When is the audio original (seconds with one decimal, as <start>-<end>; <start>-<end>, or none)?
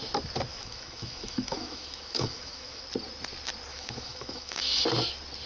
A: 0.0-0.5; 2.8-3.7; 4.8-5.5